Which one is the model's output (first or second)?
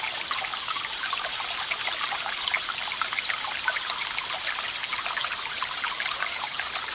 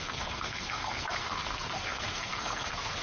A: second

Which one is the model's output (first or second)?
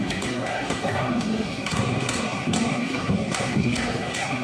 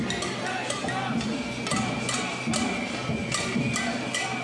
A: first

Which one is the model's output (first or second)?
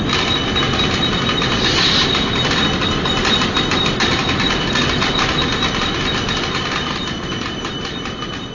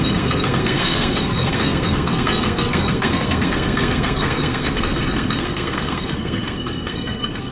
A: second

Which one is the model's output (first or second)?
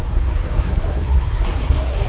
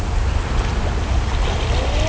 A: first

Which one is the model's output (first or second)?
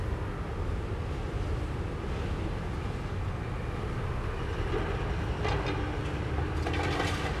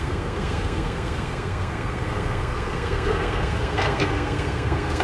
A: second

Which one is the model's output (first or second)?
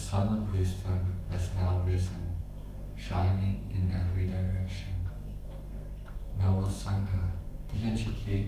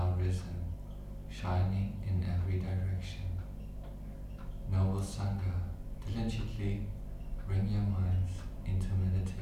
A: first